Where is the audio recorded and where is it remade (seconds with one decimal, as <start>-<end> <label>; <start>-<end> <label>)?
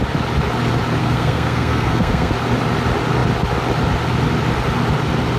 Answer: 0.0-1.0 recorded; 1.0-2.3 remade; 2.3-5.4 recorded